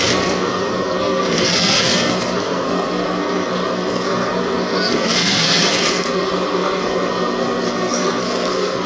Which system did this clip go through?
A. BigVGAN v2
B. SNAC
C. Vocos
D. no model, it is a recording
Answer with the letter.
B